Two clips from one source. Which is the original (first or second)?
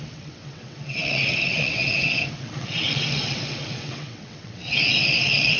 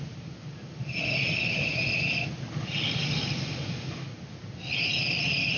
second